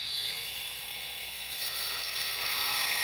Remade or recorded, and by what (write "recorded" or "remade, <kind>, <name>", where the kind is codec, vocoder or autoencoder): remade, codec, SNAC